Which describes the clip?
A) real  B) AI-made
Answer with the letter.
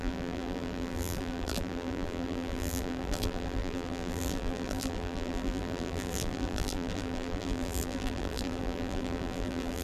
B